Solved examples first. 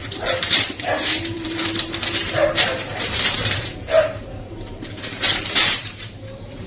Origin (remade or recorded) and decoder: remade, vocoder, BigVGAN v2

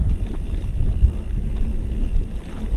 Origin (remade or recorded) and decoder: recorded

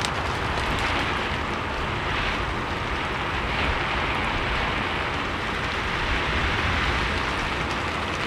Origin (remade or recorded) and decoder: recorded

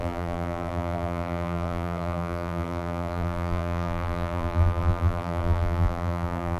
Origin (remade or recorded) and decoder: remade, vocoder, BigVGAN v2